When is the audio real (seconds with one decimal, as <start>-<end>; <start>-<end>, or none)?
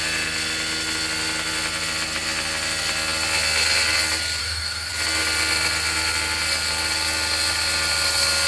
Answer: 0.0-4.4; 4.9-8.5